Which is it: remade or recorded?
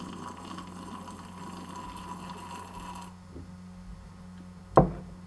recorded